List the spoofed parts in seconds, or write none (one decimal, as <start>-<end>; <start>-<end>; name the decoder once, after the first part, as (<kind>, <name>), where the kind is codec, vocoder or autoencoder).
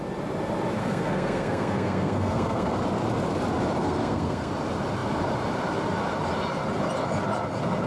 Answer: 0.8-2.7 (codec, SNAC); 3.8-4.5